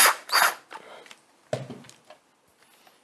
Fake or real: real